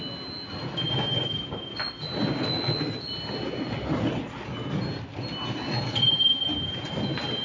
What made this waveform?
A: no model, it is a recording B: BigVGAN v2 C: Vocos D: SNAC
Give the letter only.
A